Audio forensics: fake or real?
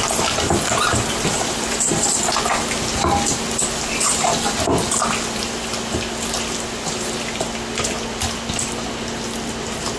real